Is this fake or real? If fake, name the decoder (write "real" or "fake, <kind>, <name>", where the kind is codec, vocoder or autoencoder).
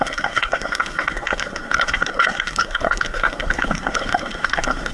fake, codec, SNAC